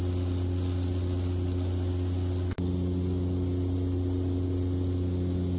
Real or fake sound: real